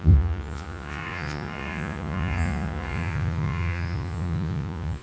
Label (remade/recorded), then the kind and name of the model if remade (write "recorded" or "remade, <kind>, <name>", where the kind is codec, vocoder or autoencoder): remade, vocoder, Vocos